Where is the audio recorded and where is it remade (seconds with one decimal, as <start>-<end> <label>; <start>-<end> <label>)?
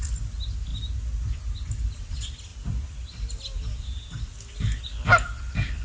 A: 0.0-5.8 recorded